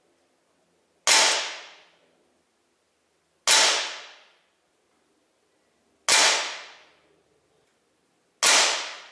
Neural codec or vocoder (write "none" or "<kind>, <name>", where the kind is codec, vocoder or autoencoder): none